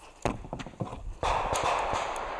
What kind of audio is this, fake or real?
real